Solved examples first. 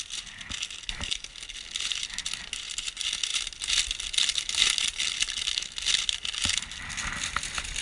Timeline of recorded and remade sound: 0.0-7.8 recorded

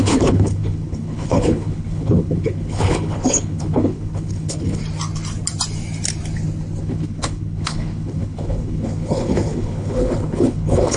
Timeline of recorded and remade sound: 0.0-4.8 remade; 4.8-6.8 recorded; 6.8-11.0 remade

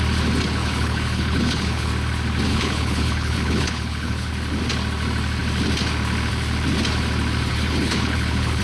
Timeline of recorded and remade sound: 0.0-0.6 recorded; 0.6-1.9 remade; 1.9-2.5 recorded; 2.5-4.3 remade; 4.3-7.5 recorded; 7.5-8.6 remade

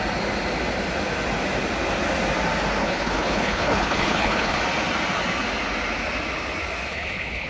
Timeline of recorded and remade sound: 0.0-2.8 recorded; 2.8-4.6 remade; 4.6-6.9 recorded; 6.9-7.5 remade

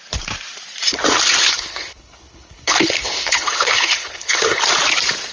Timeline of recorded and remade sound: 0.0-1.4 recorded; 1.4-4.6 remade; 4.6-5.3 recorded

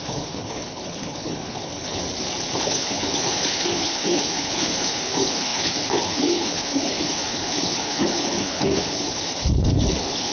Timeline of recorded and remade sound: 0.0-2.0 remade; 2.0-2.6 recorded; 2.6-10.3 remade

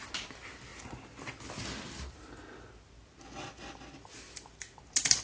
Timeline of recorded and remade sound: 0.0-5.2 recorded

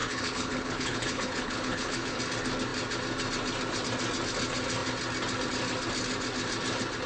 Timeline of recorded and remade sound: 0.0-2.2 remade; 2.2-7.1 recorded